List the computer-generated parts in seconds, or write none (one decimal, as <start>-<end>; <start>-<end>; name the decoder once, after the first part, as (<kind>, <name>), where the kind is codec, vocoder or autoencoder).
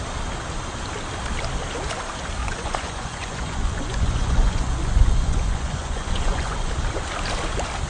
2.4-6.7 (vocoder, Vocos)